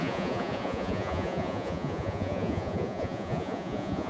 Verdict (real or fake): fake